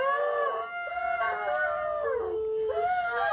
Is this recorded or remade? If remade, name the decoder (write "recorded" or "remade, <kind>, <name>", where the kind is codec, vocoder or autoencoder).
recorded